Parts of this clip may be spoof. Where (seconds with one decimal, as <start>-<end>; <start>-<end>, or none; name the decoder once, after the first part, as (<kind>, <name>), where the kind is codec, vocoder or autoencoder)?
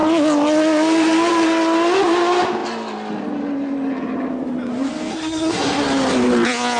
5.1-5.8 (codec, SNAC)